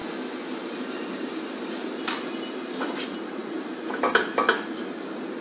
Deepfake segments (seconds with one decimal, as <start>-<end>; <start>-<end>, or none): none

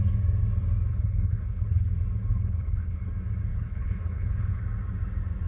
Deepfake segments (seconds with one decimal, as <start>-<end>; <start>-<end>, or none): 0.9-1.9; 2.3-3.0; 3.5-4.6

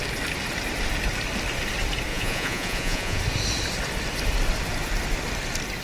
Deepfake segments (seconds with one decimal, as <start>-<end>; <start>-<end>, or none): 2.1-3.2